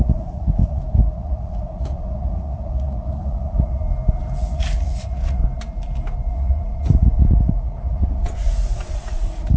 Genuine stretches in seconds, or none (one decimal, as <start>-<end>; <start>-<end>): 3.8-4.4; 5.4-6.3